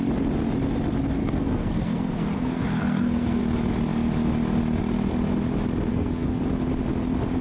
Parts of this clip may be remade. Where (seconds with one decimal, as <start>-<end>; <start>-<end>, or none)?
1.2-3.4; 5.9-6.4